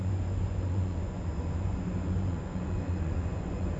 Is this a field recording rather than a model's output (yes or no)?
no